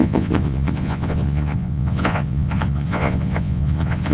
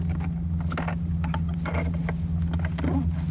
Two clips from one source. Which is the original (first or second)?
second